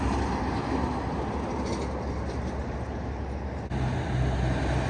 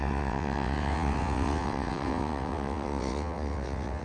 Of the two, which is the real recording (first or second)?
first